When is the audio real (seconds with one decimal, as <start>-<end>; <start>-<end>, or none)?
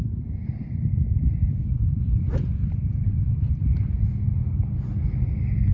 0.0-0.6; 4.0-5.7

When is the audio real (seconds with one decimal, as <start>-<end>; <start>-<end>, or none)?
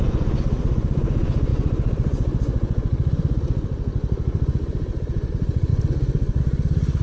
5.7-6.4